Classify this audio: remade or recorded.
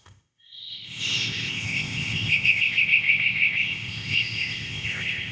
remade